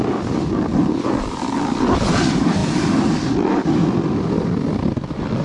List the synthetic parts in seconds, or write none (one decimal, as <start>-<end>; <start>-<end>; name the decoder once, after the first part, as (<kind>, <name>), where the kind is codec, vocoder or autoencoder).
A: 0.7-1.4 (vocoder, BigVGAN v2)